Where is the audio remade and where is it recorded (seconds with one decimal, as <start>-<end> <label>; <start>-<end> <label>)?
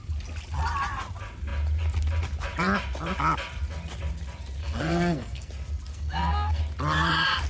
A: 0.0-4.6 recorded; 4.6-5.5 remade; 5.5-5.9 recorded; 5.9-6.6 remade; 6.6-7.5 recorded